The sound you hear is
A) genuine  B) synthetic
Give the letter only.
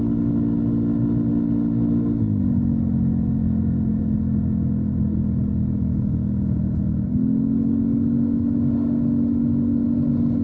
A